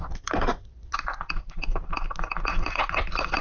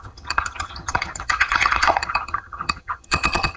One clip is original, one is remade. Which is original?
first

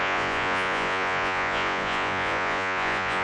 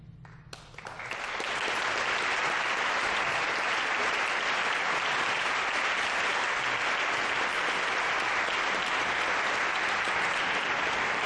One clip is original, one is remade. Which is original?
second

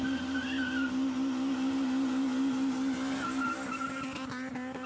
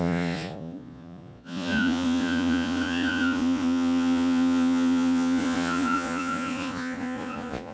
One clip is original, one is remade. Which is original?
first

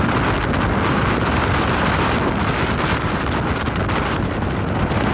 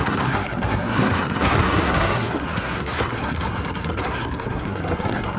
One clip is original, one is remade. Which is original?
first